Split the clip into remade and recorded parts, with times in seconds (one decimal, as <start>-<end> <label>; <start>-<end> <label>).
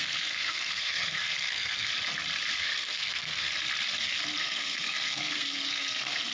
0.0-1.9 remade; 1.9-2.6 recorded; 2.6-3.5 remade; 3.5-4.4 recorded; 4.4-6.3 remade